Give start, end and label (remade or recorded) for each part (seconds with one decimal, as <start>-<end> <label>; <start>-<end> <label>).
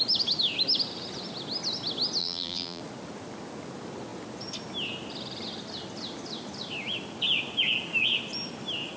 0.0-2.2 recorded; 2.2-2.8 remade; 2.8-9.0 recorded